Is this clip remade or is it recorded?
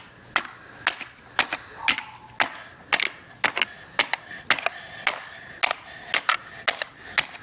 recorded